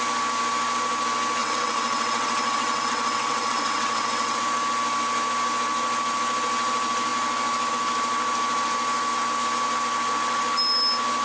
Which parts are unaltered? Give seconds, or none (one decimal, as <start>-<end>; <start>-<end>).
0.0-1.4; 4.4-11.2